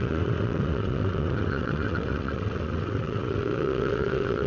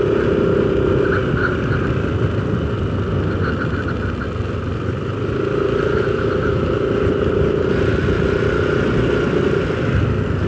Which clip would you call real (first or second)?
second